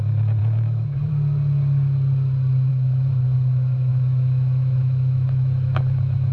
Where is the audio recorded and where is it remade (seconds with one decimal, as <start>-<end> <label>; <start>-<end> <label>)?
0.0-0.4 recorded; 0.4-1.1 remade; 1.1-2.7 recorded; 2.7-6.3 remade